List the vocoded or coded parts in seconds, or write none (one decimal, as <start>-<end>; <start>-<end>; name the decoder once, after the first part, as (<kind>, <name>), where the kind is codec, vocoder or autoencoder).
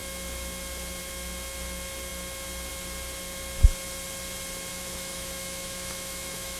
4.7-6.6 (autoencoder, DAC-VAE)